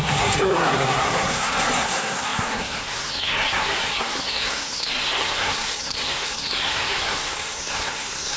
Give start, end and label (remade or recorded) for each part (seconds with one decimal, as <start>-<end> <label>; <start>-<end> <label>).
0.0-8.4 remade